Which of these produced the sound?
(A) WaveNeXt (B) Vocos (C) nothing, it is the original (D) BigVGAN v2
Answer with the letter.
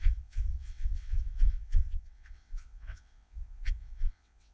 A